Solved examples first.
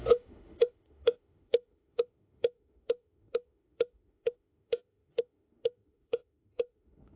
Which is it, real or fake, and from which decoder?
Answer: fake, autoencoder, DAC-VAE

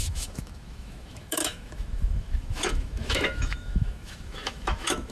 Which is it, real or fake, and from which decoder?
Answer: fake, autoencoder, DAC-VAE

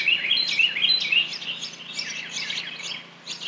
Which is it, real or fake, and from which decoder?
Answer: real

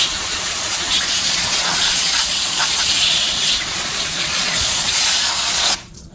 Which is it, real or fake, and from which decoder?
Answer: fake, vocoder, Vocos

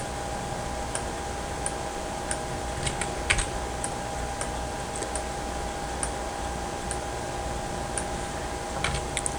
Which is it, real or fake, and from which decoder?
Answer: real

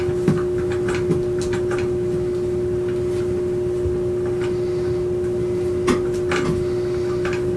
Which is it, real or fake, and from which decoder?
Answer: real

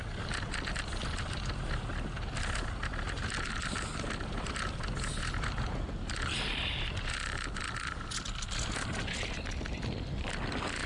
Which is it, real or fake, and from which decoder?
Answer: real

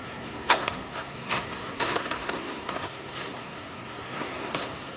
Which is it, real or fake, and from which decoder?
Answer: fake, codec, SNAC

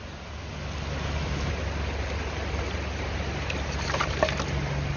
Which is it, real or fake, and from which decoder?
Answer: real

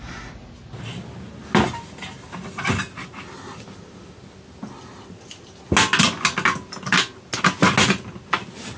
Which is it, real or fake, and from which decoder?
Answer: real